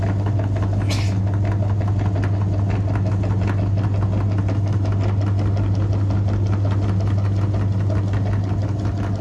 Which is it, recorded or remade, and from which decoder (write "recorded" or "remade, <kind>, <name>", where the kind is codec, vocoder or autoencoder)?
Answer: recorded